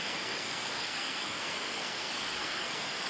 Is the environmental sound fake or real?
fake